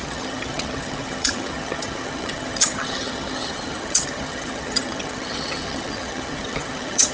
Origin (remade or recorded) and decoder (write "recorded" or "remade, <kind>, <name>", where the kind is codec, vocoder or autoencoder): remade, vocoder, HiFi-GAN